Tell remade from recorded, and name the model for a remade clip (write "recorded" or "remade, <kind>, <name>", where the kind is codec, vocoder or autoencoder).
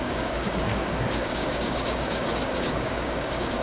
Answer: remade, codec, DAC